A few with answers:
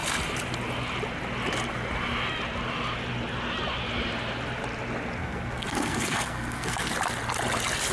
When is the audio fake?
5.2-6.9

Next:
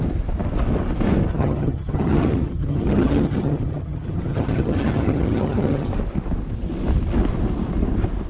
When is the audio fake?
1.3-5.9

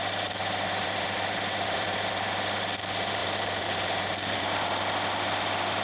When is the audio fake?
0.4-2.1; 3.2-4.8

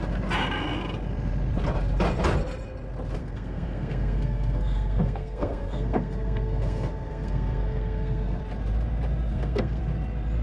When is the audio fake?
3.2-8.4; 9.3-9.8

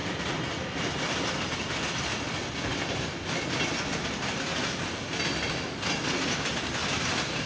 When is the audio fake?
none

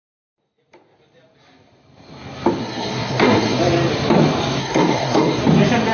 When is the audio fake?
2.6-3.6; 4.6-5.4

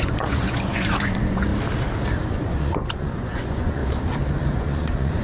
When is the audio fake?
0.0-1.5; 2.3-3.8; 4.4-5.2